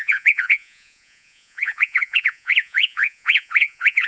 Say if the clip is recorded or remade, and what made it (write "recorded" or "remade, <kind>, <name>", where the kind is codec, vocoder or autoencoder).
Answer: remade, vocoder, Vocos